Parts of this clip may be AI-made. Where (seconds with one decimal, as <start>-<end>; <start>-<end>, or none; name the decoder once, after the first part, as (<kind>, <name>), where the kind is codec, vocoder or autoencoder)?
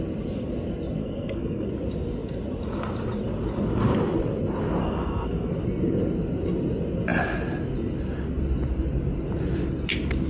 1.0-1.7 (codec, SNAC); 4.8-5.5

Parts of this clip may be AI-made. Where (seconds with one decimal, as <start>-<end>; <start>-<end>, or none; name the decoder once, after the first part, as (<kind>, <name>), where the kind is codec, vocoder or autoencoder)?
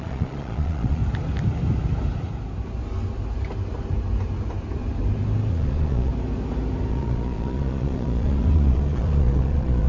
0.0-1.0 (vocoder, Vocos); 5.5-6.1; 6.9-9.9